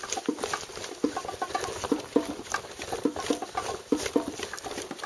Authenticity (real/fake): real